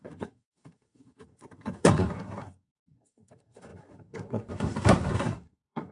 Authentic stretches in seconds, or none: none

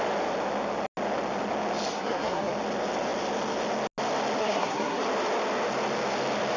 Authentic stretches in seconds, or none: 0.0-1.9; 2.5-4.4; 5.0-6.6

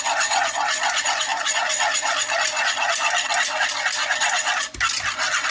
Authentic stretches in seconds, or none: 0.0-5.5